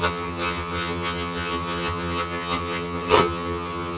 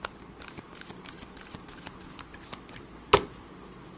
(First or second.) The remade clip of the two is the first